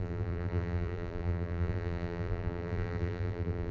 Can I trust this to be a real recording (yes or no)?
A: no